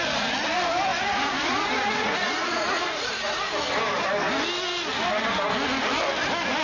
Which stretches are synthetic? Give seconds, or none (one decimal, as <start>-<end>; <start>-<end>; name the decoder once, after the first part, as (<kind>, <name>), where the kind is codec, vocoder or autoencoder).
0.9-3.5 (vocoder, Vocos)